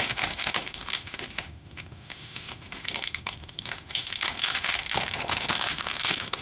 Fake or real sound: fake